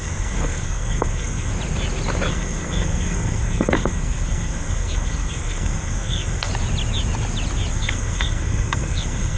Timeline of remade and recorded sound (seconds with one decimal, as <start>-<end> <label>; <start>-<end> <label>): 0.0-1.5 remade; 1.5-2.3 recorded; 2.3-6.5 remade; 6.5-7.7 recorded; 7.7-9.4 remade